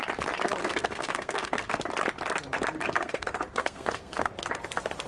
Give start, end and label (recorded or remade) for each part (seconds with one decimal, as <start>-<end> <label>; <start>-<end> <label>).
0.0-0.6 recorded; 0.6-1.8 remade; 1.8-2.8 recorded; 2.8-4.3 remade; 4.3-5.1 recorded